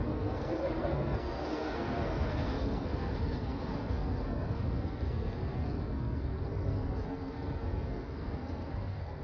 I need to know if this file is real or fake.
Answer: fake